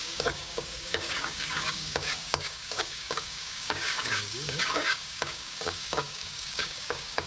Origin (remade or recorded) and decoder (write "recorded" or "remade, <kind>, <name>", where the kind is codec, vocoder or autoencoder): remade, codec, DAC